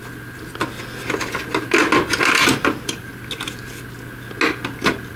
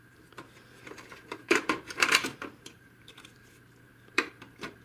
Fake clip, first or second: second